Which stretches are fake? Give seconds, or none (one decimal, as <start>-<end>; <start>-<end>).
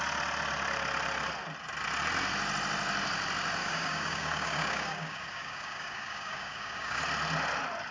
3.6-7.0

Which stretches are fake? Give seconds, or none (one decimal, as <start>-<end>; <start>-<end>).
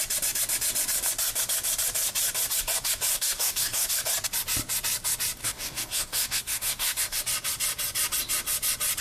3.1-3.9; 5.4-7.2